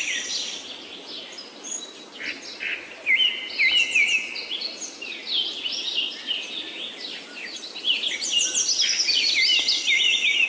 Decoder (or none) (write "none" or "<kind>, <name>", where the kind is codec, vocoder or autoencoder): none